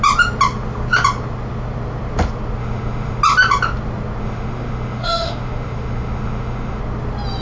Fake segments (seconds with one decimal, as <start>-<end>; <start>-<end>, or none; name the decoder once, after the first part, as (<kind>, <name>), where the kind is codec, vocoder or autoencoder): 2.6-3.2 (autoencoder, DAC-VAE); 4.2-6.8